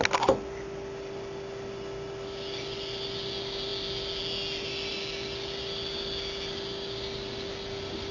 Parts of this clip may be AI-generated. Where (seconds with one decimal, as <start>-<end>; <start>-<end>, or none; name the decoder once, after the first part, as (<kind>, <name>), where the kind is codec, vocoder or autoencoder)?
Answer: none